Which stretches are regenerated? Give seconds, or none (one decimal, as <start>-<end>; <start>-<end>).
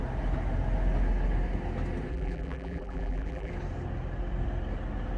2.1-3.5